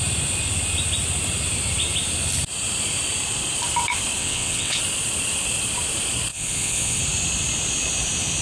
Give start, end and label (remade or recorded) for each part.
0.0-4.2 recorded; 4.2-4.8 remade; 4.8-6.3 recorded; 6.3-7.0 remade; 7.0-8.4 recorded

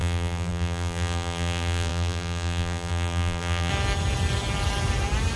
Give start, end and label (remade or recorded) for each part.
0.0-3.7 remade; 3.7-5.4 recorded